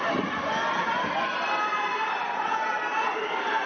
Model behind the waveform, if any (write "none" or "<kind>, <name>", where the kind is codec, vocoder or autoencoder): none